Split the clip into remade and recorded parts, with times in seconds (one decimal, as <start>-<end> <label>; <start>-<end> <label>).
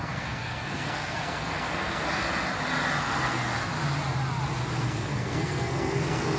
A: 0.0-2.2 remade; 2.2-3.0 recorded; 3.0-3.4 remade; 3.4-4.8 recorded; 4.8-6.4 remade